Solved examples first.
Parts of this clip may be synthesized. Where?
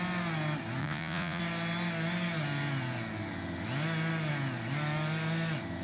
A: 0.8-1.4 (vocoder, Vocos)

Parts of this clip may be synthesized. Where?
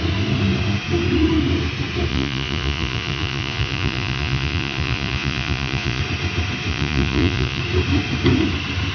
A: 2.1-6.0 (vocoder, Vocos); 6.7-7.6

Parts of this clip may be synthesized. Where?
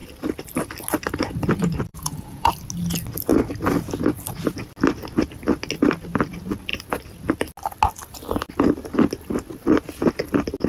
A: 1.9-2.5 (vocoder, Vocos)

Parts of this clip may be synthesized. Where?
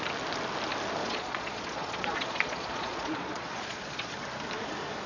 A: 1.0-4.1 (vocoder, Vocos)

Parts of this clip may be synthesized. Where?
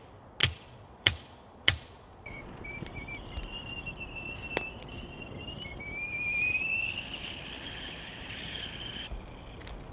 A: 0.4-2.6 (vocoder, Vocos)